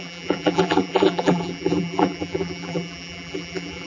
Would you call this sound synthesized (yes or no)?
yes